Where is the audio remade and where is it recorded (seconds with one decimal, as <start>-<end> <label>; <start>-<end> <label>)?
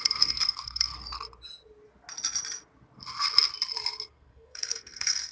0.0-0.9 remade; 0.9-4.1 recorded; 4.1-5.3 remade